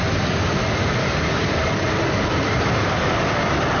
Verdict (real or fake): real